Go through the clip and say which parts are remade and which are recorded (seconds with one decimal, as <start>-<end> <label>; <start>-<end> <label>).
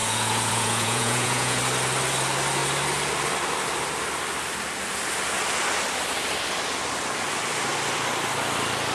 0.0-1.6 remade; 1.6-8.9 recorded